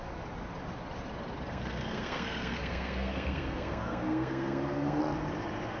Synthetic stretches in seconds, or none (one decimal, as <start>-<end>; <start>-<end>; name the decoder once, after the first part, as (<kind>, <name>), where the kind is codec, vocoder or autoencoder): 1.5-5.0 (codec, SNAC)